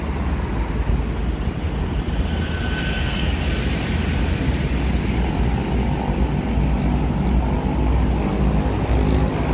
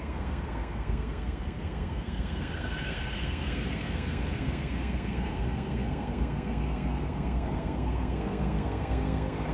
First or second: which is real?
first